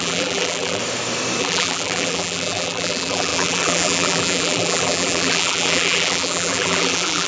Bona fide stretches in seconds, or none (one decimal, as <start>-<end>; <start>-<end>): 0.8-1.4